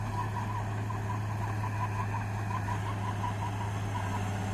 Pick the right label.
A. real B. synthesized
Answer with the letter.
A